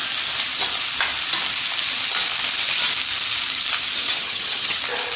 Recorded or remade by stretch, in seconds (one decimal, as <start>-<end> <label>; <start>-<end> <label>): 0.0-4.0 recorded; 4.0-4.8 remade; 4.8-5.2 recorded